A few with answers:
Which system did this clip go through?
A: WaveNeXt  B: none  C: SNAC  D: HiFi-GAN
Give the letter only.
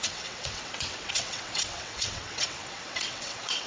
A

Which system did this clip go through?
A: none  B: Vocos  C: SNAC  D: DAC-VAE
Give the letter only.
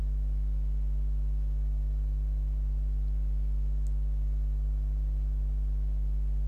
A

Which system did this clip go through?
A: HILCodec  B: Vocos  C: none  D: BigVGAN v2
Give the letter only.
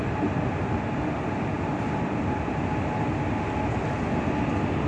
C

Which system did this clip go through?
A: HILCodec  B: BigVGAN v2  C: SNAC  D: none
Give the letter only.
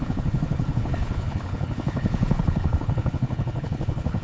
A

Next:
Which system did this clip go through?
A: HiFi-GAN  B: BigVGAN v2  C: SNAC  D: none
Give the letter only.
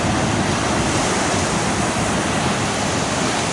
D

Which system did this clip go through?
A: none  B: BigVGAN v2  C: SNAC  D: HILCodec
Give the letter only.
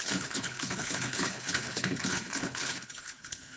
D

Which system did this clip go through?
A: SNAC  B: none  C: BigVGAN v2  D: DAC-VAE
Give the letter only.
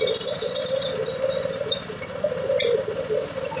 B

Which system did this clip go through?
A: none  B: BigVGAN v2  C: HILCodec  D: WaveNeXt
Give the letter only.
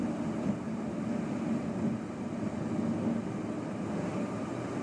A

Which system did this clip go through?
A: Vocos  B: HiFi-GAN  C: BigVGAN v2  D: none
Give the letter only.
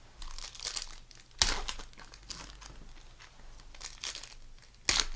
D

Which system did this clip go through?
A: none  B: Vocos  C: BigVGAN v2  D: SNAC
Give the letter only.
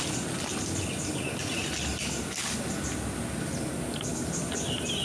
A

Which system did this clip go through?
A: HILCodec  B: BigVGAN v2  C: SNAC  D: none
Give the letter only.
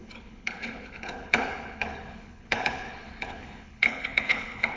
A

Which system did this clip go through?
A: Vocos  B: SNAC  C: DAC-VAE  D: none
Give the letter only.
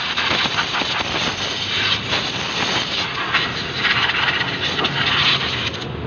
D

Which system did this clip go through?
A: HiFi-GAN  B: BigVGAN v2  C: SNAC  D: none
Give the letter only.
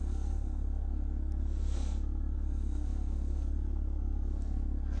C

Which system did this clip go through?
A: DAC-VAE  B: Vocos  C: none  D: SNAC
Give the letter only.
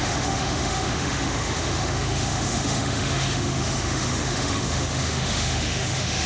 A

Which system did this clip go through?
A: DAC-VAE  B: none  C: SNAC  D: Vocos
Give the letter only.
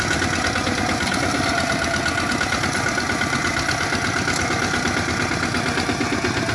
B